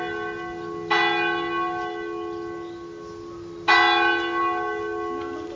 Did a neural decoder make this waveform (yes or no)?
no